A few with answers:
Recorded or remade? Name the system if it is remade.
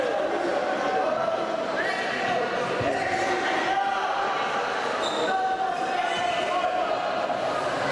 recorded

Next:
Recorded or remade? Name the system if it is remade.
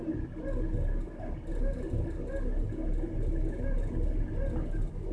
recorded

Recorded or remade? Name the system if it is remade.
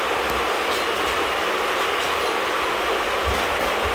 recorded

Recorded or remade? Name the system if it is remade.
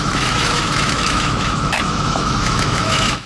remade, autoencoder, DAC-VAE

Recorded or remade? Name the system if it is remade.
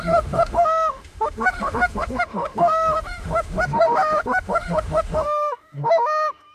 remade, autoencoder, DAC-VAE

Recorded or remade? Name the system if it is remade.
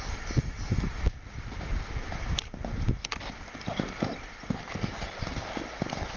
recorded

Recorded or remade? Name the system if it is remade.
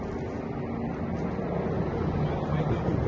recorded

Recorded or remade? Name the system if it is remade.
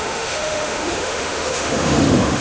remade, autoencoder, DAC-VAE